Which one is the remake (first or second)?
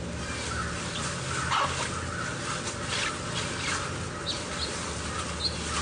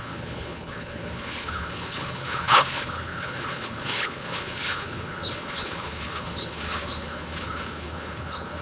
second